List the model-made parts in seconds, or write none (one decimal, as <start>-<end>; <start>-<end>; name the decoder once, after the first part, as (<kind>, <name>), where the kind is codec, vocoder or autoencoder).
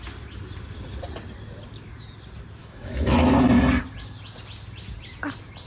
2.6-3.3 (autoencoder, DAC-VAE)